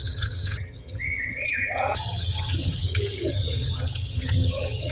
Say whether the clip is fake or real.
fake